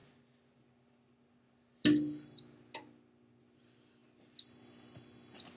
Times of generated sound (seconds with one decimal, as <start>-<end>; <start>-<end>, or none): none